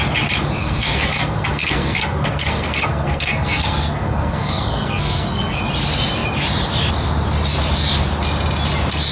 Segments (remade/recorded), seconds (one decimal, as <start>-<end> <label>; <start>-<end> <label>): 0.0-0.6 recorded; 0.6-5.6 remade; 5.6-9.1 recorded